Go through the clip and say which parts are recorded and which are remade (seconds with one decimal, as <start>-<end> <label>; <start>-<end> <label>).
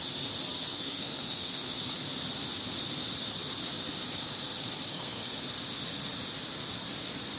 0.0-0.7 recorded; 0.7-1.8 remade; 1.8-4.9 recorded; 4.9-5.4 remade; 5.4-7.4 recorded